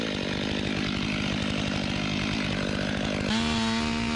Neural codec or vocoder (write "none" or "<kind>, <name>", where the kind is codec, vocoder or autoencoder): none